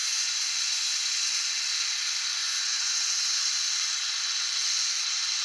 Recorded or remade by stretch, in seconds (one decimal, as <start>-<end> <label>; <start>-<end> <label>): 0.0-1.2 remade; 1.2-2.4 recorded; 2.4-3.4 remade; 3.4-5.4 recorded